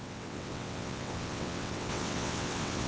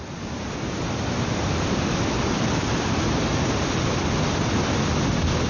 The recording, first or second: second